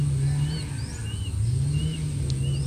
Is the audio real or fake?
real